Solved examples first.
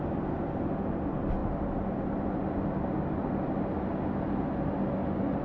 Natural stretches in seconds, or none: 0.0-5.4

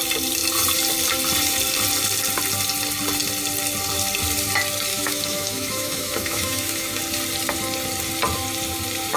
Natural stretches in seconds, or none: 0.0-4.9; 7.0-9.2

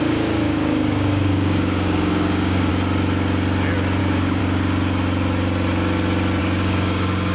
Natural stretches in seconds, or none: 2.7-4.0; 4.4-6.4

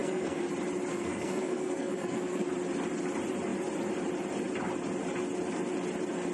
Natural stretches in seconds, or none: 0.5-0.9; 2.5-6.3

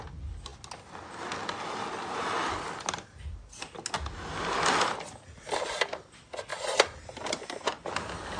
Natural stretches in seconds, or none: 0.0-8.4

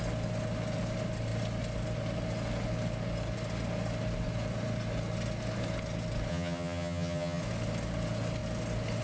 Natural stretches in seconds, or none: 0.0-6.3; 7.4-9.0

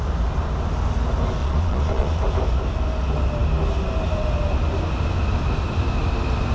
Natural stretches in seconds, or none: 0.0-1.4; 2.2-6.5

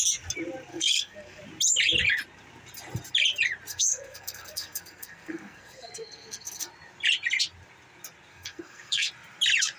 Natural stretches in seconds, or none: 0.0-0.7; 1.4-3.7; 6.7-8.3; 9.1-9.8